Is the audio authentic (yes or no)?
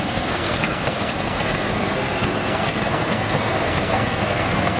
no